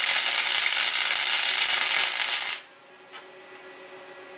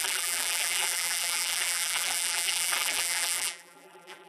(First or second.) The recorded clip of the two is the first